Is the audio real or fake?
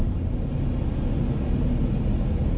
real